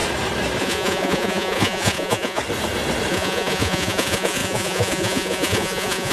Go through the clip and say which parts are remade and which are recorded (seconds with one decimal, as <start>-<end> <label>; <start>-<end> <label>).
0.0-0.6 recorded; 0.6-2.4 remade; 2.4-3.1 recorded; 3.1-6.1 remade